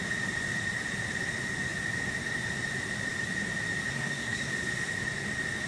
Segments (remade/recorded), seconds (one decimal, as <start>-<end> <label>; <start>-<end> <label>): 0.0-3.9 recorded; 3.9-4.5 remade; 4.5-5.7 recorded